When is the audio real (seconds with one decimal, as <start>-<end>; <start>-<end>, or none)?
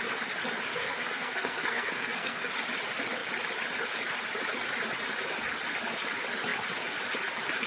0.0-0.7; 2.5-7.7